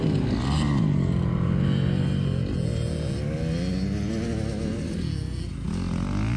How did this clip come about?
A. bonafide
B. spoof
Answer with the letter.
A